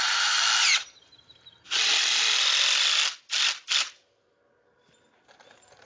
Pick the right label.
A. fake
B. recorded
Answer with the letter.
B